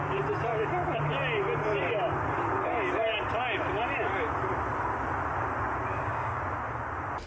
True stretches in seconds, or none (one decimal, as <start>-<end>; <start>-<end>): 0.0-5.9; 6.4-7.3